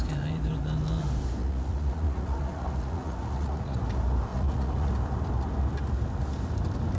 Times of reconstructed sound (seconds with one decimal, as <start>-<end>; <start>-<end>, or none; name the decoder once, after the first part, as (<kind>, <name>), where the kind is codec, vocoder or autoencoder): 1.4-3.8 (vocoder, Vocos); 4.3-4.9